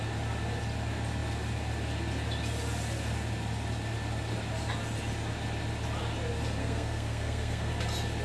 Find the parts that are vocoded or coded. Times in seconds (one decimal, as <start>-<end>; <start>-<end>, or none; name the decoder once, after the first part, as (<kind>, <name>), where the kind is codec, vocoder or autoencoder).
6.6-7.7 (codec, SNAC)

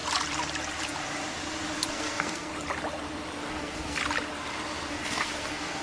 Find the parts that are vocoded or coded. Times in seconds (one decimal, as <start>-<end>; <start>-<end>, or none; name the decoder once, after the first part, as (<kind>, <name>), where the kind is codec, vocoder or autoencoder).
1.9-2.5 (codec, SNAC); 3.5-4.0; 4.9-5.8

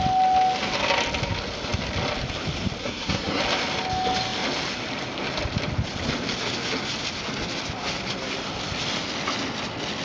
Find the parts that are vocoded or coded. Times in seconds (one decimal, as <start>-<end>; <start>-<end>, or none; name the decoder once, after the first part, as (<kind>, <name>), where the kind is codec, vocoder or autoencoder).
2.8-3.4 (codec, SNAC)

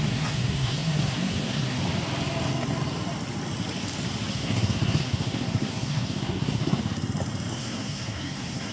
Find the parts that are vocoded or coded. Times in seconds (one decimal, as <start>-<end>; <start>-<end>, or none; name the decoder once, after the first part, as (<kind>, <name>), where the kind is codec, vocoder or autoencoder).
0.0-1.8 (codec, SNAC); 4.3-6.8; 7.5-8.7

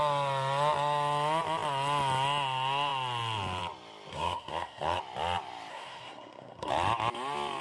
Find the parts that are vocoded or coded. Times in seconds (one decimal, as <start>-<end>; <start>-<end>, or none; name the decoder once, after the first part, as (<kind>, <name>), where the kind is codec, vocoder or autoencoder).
4.1-5.0 (codec, SNAC); 5.7-6.7

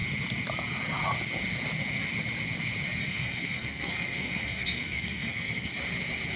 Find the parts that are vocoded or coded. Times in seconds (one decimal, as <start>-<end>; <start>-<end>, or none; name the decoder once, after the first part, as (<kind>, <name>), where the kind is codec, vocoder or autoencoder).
3.0-5.7 (codec, SNAC)

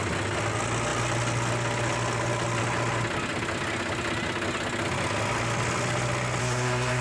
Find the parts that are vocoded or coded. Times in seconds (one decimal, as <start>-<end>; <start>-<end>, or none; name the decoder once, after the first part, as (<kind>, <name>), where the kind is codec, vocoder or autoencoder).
6.4-7.0 (codec, SNAC)

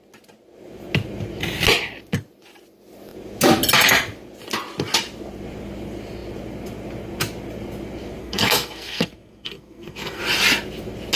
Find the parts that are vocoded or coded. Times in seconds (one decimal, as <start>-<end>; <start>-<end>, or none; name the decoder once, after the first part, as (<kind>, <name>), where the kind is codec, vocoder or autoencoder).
8.2-10.2 (codec, SNAC)